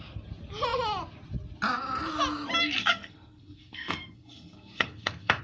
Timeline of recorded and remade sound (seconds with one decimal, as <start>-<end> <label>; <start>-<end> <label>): 0.0-2.8 recorded; 2.8-5.4 remade